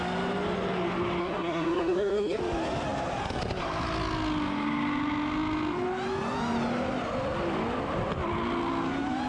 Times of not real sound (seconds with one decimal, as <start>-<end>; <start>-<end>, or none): 1.2-2.4